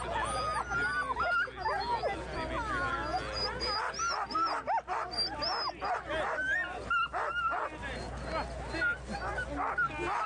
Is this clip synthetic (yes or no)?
no